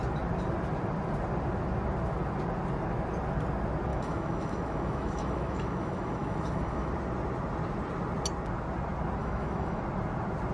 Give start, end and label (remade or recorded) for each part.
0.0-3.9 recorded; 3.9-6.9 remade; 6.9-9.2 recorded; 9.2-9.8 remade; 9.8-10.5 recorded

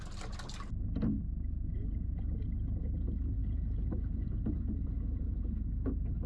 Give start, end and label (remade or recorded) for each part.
0.0-6.3 recorded

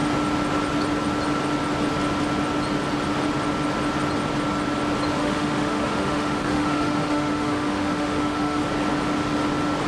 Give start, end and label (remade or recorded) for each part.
0.0-5.2 recorded; 5.2-8.6 remade; 8.6-9.9 recorded

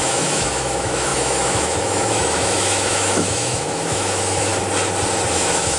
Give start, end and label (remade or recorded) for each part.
0.0-4.5 remade; 4.5-5.3 recorded; 5.3-5.8 remade

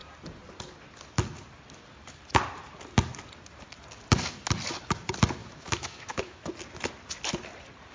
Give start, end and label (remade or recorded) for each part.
0.0-5.4 recorded; 5.4-6.5 remade; 6.5-7.9 recorded